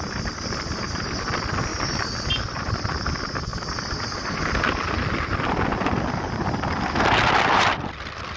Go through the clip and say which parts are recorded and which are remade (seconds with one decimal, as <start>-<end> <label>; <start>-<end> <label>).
0.0-3.5 recorded; 3.5-4.0 remade; 4.0-8.4 recorded